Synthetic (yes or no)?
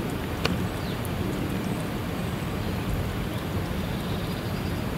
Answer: yes